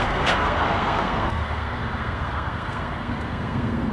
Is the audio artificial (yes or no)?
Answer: yes